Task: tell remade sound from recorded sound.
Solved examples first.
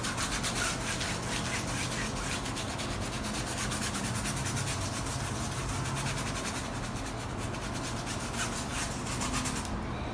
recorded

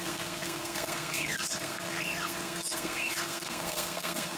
remade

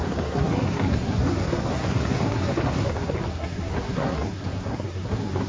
remade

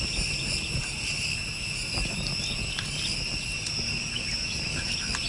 recorded